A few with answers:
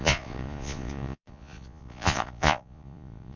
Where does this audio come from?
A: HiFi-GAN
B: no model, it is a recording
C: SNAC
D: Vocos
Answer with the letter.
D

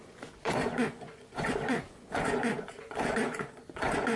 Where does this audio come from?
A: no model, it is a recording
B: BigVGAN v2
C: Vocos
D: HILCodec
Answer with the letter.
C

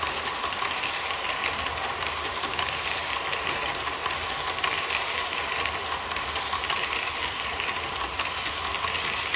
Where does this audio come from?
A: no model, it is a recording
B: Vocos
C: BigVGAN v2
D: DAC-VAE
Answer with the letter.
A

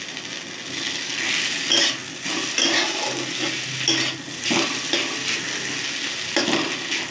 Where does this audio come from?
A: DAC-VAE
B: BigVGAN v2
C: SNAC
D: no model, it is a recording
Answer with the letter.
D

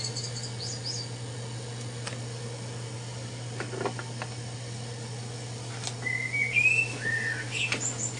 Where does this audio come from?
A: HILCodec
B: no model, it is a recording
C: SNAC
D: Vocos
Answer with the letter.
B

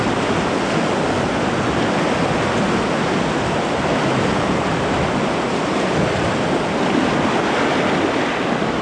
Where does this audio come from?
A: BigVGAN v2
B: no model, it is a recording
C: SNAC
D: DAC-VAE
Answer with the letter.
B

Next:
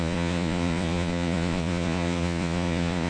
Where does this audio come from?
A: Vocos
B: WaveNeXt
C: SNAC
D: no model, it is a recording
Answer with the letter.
A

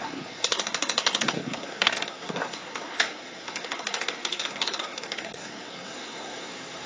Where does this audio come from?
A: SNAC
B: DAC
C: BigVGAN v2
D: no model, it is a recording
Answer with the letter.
A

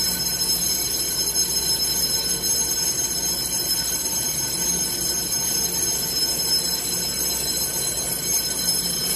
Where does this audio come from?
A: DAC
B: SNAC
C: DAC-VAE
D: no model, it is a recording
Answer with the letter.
D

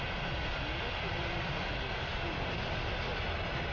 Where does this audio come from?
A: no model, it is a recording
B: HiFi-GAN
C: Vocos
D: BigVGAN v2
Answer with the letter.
A